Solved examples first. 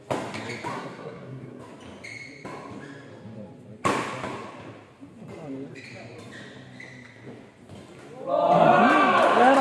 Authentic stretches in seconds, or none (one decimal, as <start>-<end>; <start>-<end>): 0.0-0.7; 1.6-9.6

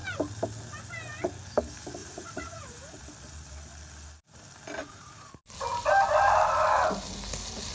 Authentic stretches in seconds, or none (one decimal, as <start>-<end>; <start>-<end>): 0.0-2.0; 3.0-4.8; 5.3-7.7

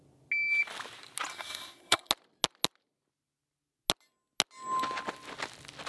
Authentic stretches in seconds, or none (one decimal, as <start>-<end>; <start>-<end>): 0.0-1.3; 2.1-5.9

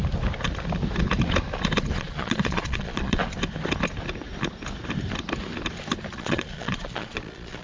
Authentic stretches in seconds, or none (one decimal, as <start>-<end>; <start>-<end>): 0.0-1.9; 3.2-6.1

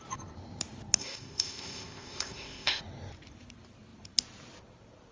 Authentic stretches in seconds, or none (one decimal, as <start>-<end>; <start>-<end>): 0.0-1.0; 2.8-5.1